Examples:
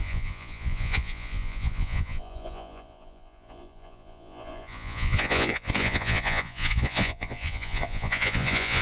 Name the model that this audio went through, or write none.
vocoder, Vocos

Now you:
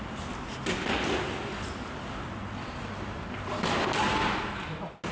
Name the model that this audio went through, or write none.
none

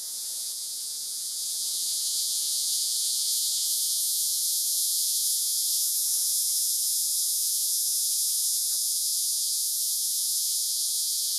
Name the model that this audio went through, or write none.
vocoder, Vocos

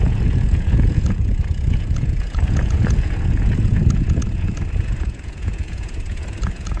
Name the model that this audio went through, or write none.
vocoder, Vocos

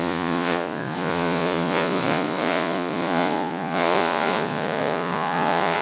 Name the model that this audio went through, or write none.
vocoder, Vocos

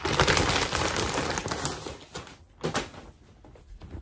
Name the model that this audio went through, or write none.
none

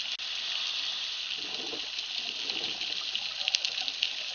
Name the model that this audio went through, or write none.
none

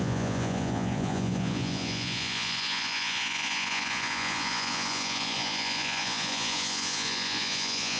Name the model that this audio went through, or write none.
vocoder, Vocos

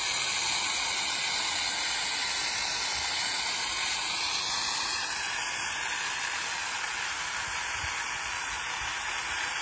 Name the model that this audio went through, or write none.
none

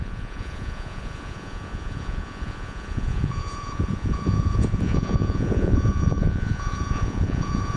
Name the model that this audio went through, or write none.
vocoder, Vocos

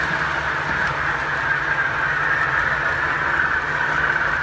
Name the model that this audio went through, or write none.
none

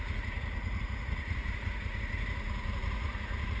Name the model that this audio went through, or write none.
vocoder, Vocos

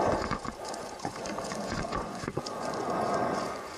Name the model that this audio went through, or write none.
vocoder, Vocos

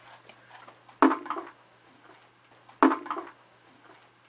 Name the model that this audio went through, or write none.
none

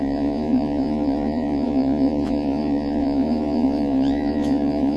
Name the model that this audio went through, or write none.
vocoder, Vocos